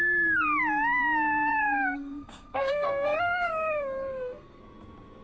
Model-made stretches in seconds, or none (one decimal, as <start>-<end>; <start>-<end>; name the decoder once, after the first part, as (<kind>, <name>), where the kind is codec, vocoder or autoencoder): 1.5-4.6 (codec, SNAC)